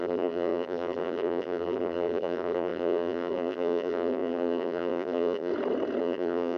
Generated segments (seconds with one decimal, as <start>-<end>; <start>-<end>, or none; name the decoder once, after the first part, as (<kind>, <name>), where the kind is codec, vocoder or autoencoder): 0.0-5.5 (vocoder, BigVGAN v2); 6.0-6.6